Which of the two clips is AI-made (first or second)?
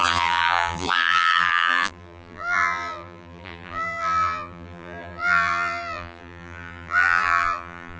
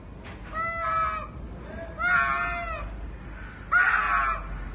first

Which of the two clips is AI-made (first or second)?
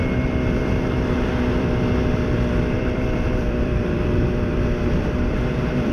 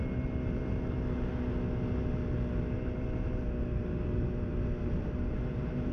first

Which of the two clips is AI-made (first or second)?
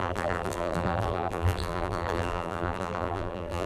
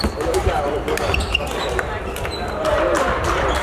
first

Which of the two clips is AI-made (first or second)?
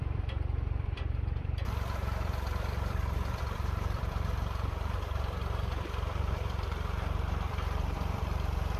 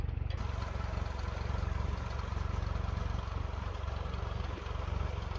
first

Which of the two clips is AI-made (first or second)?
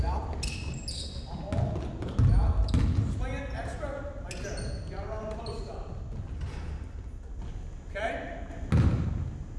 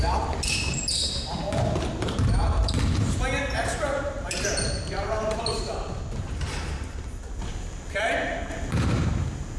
second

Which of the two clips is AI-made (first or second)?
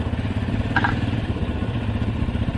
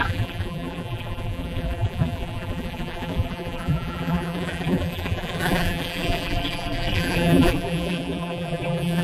second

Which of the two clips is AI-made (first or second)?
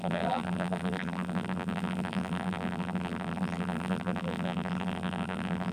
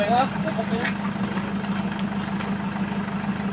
first